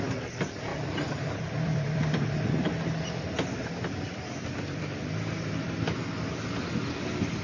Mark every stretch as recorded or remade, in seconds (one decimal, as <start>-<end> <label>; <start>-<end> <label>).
0.0-0.7 recorded; 0.7-4.8 remade; 4.8-7.4 recorded